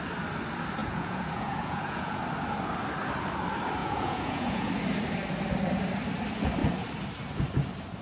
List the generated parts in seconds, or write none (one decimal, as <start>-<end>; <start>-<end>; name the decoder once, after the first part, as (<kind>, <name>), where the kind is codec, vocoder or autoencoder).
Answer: 0.8-2.2 (vocoder, Vocos); 3.8-4.7